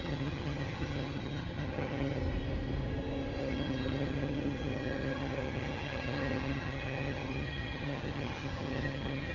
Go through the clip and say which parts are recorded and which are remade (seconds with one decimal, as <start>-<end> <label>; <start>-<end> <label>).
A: 0.0-2.2 remade; 2.2-3.4 recorded; 3.4-9.3 remade